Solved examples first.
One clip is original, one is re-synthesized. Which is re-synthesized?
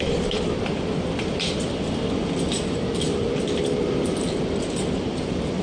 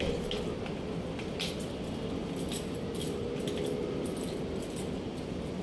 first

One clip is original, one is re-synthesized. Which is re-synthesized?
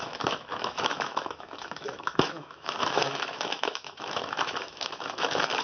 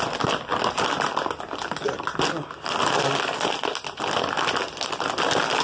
first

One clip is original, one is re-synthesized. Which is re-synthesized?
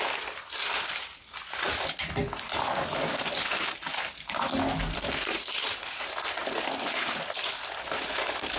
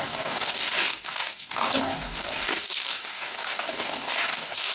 second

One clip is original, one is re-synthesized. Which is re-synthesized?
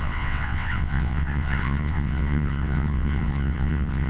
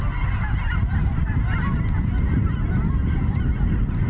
first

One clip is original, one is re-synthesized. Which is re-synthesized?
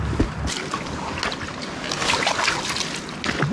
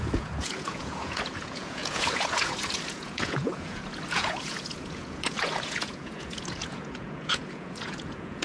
second